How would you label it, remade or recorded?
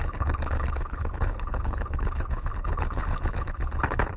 remade